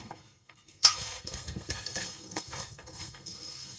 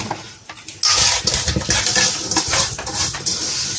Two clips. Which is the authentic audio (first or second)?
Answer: second